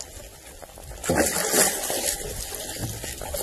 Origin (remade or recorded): recorded